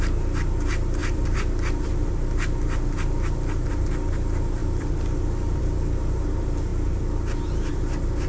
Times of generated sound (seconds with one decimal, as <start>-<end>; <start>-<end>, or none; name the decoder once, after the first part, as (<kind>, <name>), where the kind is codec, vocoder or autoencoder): 1.0-3.7 (vocoder, BigVGAN v2); 4.6-5.6